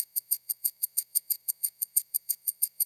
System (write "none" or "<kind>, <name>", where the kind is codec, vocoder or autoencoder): codec, SNAC